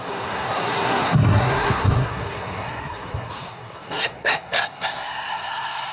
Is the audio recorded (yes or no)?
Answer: no